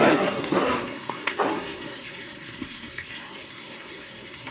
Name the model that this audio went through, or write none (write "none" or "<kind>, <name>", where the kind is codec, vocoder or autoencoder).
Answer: codec, SNAC